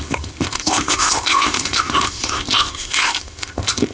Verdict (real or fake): fake